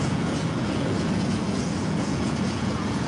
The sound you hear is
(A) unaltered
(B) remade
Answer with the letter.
B